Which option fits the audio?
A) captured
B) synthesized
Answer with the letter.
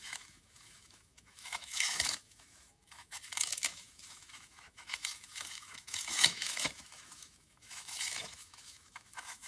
B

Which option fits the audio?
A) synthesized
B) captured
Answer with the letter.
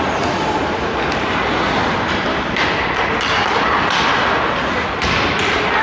B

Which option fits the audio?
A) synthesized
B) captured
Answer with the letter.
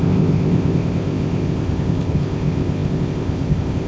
A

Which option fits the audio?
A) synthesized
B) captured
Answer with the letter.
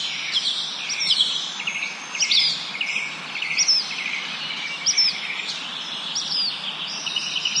B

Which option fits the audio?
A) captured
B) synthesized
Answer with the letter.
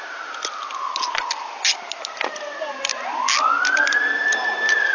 A